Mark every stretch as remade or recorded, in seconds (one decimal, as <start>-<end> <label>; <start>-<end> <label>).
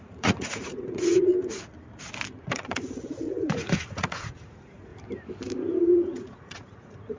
0.0-1.3 remade; 1.3-2.4 recorded; 2.4-4.9 remade; 4.9-5.8 recorded; 5.8-7.2 remade